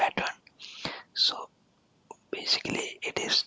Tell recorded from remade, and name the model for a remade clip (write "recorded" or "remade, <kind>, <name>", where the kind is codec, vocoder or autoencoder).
recorded